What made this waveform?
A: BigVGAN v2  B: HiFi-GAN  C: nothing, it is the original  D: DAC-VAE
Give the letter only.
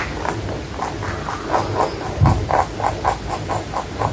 C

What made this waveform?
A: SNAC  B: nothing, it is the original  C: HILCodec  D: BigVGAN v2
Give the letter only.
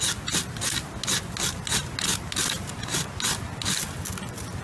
B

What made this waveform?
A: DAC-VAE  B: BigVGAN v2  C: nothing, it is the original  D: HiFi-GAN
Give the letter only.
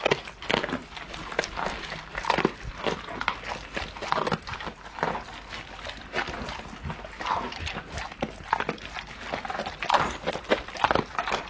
C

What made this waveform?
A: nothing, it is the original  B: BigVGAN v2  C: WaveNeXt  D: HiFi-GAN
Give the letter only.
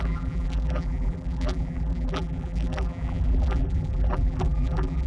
B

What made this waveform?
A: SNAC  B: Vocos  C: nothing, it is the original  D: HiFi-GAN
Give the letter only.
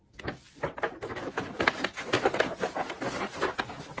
C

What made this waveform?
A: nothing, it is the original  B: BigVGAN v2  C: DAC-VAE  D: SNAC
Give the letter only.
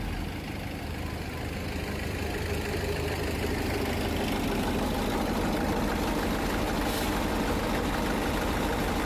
A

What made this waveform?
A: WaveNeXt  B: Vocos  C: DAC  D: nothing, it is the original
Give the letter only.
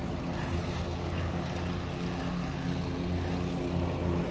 D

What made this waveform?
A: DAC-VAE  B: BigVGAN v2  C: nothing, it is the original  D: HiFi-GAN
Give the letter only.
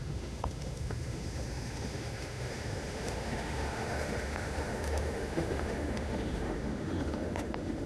A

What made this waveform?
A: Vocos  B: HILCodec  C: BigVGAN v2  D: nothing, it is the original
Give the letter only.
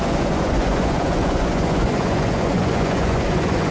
A